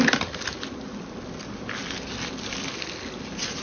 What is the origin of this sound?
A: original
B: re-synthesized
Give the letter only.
A